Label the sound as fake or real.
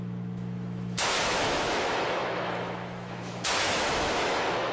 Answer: fake